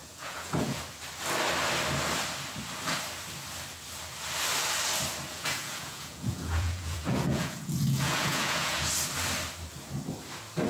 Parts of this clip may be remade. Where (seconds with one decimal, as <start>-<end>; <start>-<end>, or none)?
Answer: 0.0-0.8; 5.3-8.9